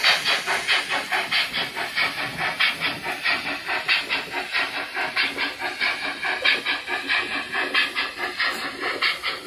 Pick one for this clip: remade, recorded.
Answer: recorded